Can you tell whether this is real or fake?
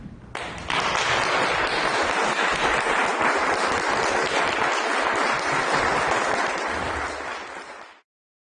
real